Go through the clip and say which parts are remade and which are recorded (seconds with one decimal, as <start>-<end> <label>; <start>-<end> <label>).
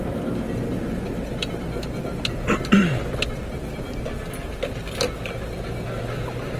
0.0-6.6 recorded